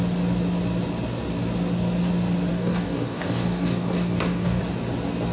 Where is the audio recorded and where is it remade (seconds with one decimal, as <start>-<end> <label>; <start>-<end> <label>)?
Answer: 0.0-2.5 recorded; 2.5-4.6 remade; 4.6-5.3 recorded